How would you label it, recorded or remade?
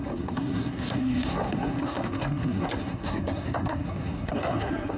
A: remade